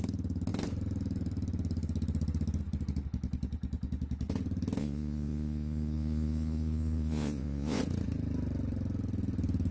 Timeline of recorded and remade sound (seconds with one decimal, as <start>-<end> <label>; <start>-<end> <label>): 0.0-4.8 recorded; 4.8-7.8 remade; 7.8-9.7 recorded